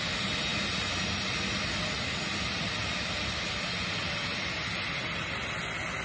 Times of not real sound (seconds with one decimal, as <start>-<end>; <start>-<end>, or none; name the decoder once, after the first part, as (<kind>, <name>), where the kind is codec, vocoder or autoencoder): none